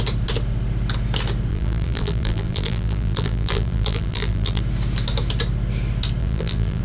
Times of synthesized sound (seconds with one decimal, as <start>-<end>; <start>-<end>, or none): 1.5-4.6; 6.2-6.8